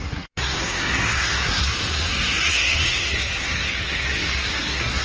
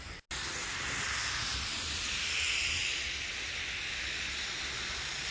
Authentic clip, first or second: second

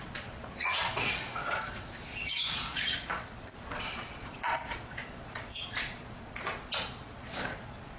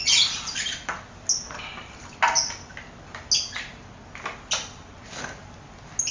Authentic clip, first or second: second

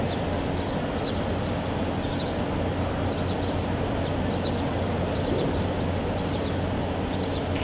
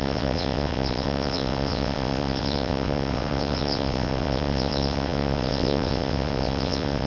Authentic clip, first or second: first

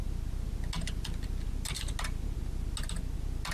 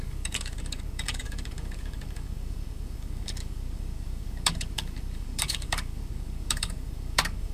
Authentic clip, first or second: first